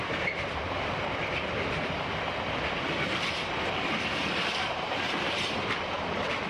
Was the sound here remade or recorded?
remade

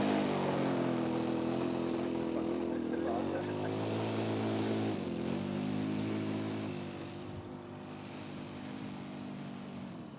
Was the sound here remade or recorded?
recorded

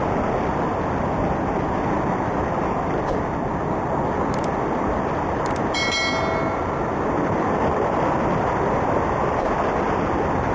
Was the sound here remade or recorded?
recorded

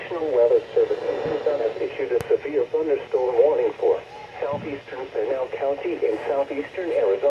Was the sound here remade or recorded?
recorded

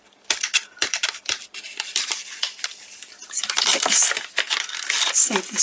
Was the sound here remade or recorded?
remade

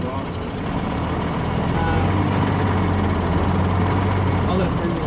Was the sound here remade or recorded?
recorded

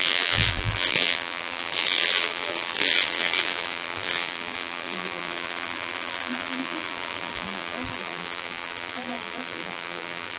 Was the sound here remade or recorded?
remade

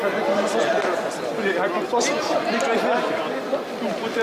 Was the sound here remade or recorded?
recorded